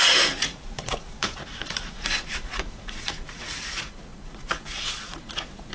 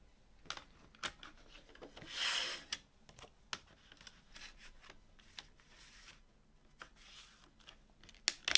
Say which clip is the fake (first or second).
first